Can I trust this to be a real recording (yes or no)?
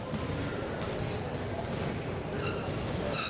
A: yes